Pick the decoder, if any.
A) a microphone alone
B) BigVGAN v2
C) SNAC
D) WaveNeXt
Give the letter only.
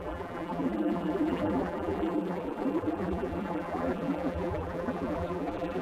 B